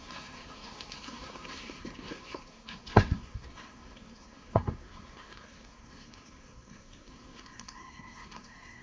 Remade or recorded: remade